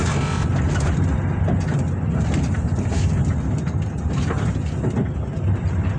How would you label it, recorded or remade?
recorded